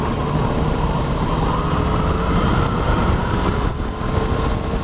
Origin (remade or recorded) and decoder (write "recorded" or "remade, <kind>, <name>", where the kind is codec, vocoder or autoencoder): recorded